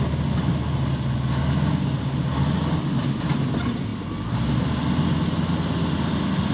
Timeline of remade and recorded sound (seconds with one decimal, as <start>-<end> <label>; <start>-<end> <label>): 0.0-6.5 recorded